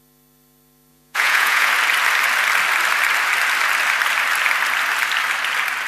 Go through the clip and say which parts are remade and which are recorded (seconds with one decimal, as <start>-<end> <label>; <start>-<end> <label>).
0.0-0.9 recorded; 0.9-1.7 remade; 1.7-5.9 recorded